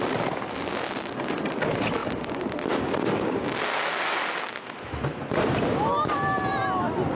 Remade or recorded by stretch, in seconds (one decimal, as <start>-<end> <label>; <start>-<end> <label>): 0.0-7.1 recorded